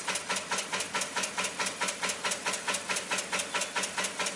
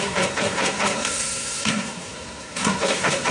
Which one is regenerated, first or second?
second